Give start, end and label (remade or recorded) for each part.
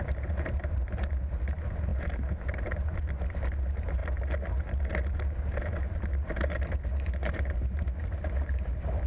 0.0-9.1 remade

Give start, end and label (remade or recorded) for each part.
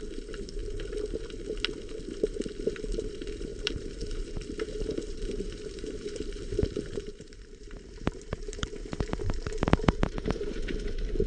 0.0-0.6 remade; 0.6-2.7 recorded; 2.7-11.3 remade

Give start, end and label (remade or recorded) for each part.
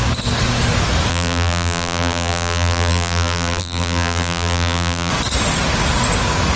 0.0-1.1 recorded; 1.1-5.1 remade; 5.1-6.6 recorded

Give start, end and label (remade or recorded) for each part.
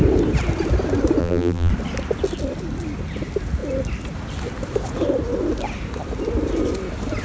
0.0-1.2 recorded; 1.2-1.7 remade; 1.7-7.2 recorded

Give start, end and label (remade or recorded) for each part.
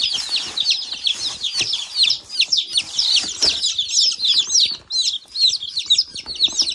0.0-6.7 recorded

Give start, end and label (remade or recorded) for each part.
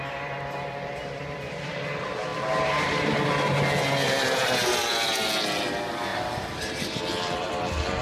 0.0-6.1 recorded; 6.1-7.0 remade; 7.0-8.0 recorded